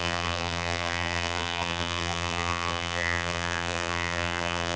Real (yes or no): no